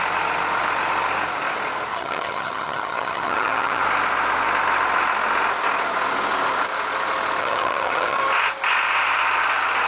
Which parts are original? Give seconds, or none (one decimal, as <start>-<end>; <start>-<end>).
0.0-1.9; 3.8-7.4; 8.2-9.9